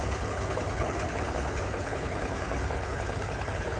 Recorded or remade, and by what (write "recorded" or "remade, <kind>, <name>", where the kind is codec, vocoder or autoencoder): remade, codec, HILCodec